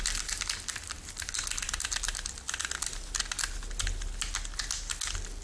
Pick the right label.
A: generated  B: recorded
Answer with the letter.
B